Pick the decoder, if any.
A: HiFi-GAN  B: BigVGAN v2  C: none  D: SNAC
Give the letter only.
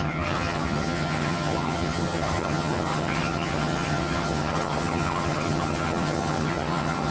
A